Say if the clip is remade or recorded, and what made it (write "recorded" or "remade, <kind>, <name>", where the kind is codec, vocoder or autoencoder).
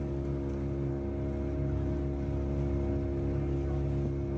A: recorded